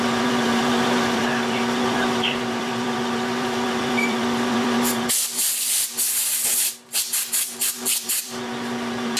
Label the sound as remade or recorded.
remade